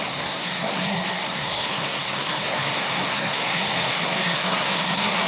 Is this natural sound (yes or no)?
no